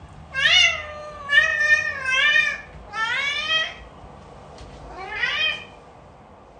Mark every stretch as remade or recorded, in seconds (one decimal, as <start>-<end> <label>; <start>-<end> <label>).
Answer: 0.0-6.6 recorded